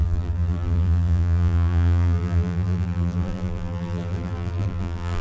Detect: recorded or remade remade